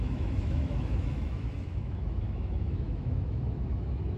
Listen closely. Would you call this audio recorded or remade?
remade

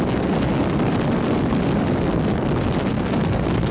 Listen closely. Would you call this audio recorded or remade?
recorded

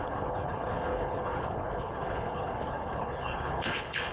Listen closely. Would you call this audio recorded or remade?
remade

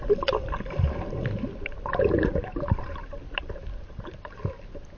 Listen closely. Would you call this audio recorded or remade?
recorded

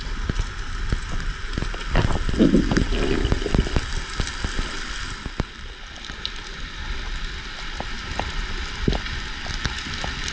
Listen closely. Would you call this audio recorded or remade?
recorded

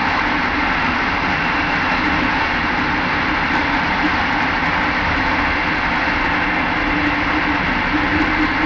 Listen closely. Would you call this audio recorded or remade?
recorded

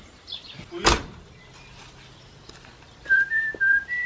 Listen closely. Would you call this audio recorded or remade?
remade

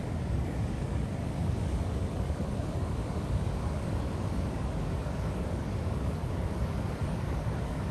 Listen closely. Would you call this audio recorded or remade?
remade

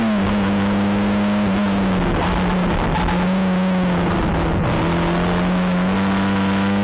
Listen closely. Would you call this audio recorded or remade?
recorded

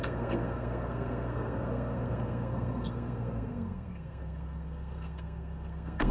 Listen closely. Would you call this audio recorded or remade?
remade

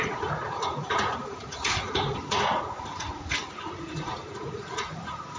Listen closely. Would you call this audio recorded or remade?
remade